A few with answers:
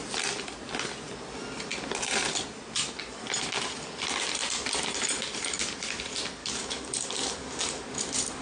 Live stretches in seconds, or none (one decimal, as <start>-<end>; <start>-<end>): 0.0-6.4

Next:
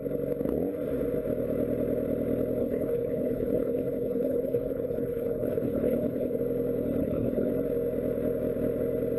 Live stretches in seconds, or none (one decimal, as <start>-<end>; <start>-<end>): 0.0-2.6; 6.4-7.0; 7.5-9.2

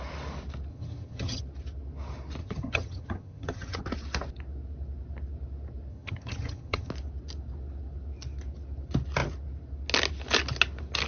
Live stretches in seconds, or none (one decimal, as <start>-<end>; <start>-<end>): 0.0-0.7; 1.4-2.4; 3.8-5.9; 6.9-11.1

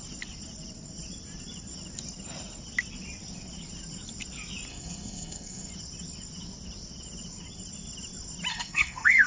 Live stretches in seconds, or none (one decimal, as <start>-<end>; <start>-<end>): 0.0-4.7; 5.7-8.5